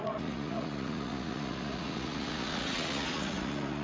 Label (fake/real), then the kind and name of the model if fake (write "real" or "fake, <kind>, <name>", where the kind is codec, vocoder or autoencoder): fake, vocoder, Vocos